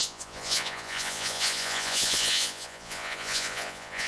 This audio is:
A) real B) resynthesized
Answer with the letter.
B